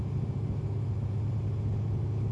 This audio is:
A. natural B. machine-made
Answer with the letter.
A